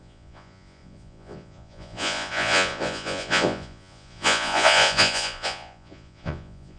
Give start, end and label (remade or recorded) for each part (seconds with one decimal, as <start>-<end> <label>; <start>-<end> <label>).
0.0-6.8 remade